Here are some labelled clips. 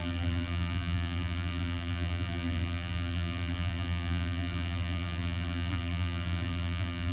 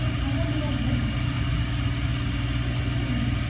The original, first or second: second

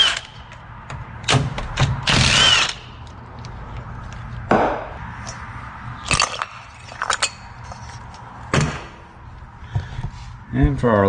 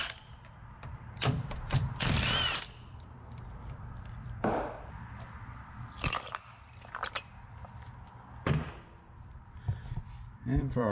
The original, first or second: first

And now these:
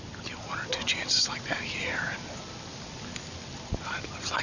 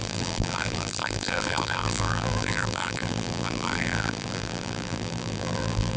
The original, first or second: first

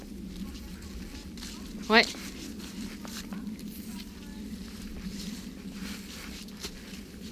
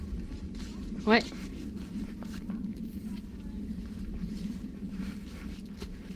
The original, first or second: first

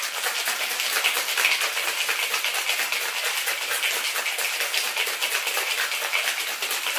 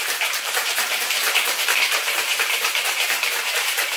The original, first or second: first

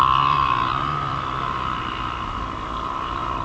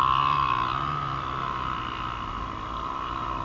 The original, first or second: second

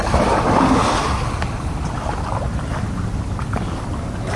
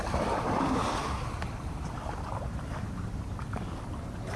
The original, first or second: first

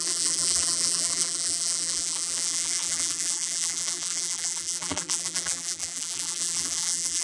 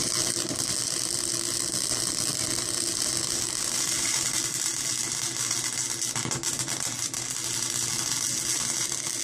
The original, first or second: second